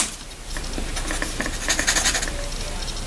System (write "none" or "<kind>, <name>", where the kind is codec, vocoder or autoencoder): none